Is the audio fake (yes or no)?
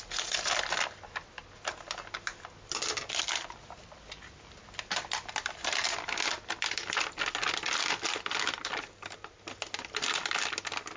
no